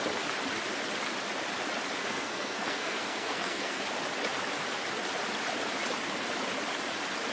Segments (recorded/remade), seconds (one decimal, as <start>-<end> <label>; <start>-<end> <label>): 0.0-2.0 recorded; 2.0-3.8 remade; 3.8-7.3 recorded

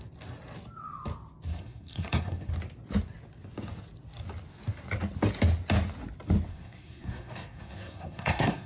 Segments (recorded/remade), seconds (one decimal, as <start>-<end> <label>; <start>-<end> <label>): 0.0-1.5 recorded; 1.5-2.5 remade; 2.5-6.5 recorded; 6.5-8.7 remade

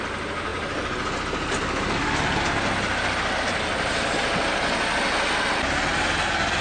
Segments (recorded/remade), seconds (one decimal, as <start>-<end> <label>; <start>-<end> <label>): 0.0-6.6 recorded

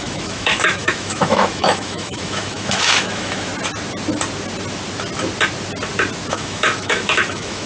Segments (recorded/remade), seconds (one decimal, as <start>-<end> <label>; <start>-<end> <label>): 0.0-3.5 remade; 3.5-6.3 recorded; 6.3-7.7 remade

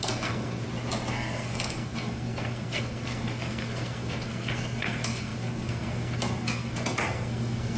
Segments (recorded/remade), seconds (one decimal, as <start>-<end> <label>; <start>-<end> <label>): 0.0-0.6 remade; 0.6-1.1 recorded; 1.1-7.8 remade

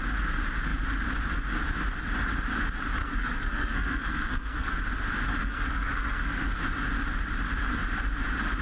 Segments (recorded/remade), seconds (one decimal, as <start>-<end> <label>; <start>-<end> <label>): 0.0-3.0 recorded; 3.0-4.7 remade; 4.7-5.4 recorded; 5.4-6.6 remade; 6.6-8.6 recorded